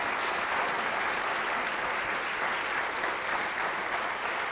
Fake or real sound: real